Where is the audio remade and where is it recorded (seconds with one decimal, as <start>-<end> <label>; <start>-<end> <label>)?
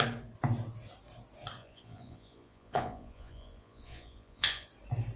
0.0-1.6 recorded; 1.6-4.7 remade; 4.7-5.2 recorded